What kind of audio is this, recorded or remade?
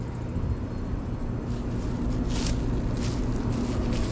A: recorded